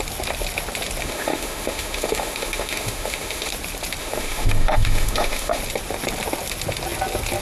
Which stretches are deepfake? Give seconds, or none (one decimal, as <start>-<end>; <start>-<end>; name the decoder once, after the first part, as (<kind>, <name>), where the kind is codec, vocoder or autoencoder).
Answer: 1.0-3.5 (autoencoder, DAC-VAE); 4.0-5.6